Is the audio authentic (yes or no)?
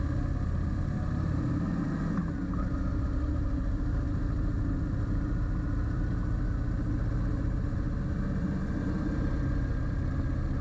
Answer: yes